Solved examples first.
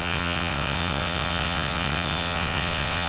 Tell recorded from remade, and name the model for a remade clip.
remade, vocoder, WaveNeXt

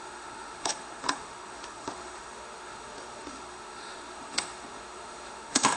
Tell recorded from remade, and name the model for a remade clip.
remade, autoencoder, DAC-VAE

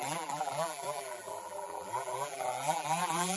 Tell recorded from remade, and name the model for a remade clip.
remade, vocoder, BigVGAN v2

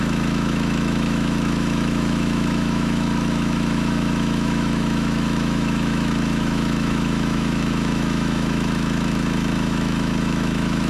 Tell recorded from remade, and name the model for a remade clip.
remade, autoencoder, DAC-VAE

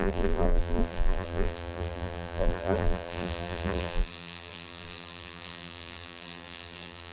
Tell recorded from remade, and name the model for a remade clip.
remade, vocoder, BigVGAN v2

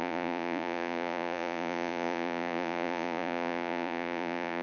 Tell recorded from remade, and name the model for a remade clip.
remade, vocoder, Vocos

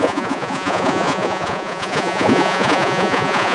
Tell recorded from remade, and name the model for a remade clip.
remade, vocoder, Vocos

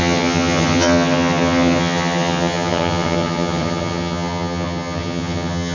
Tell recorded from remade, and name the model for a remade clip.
remade, vocoder, HiFi-GAN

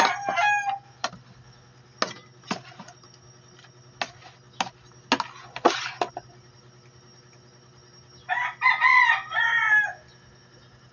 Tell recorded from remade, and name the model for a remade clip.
recorded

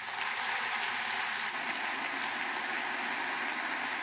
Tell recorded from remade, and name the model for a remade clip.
recorded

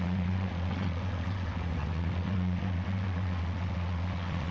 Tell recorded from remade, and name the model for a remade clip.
remade, vocoder, WaveNeXt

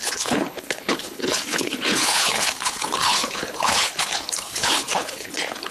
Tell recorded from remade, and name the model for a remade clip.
remade, codec, HILCodec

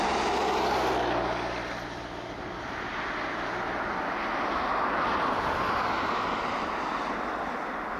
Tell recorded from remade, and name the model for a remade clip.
recorded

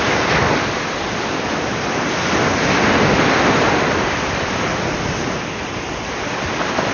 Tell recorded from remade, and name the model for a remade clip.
recorded